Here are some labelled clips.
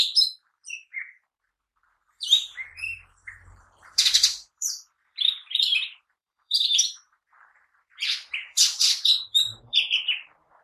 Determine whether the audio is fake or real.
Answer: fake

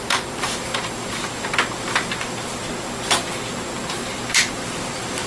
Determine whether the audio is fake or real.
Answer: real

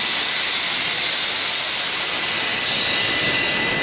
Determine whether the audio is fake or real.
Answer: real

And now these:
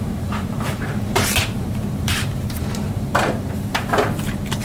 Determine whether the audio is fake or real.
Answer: fake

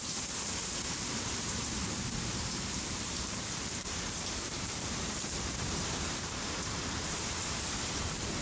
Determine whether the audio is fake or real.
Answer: fake